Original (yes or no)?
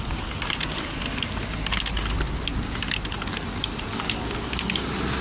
yes